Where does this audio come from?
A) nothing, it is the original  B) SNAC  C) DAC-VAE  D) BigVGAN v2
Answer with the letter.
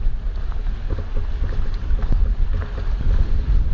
A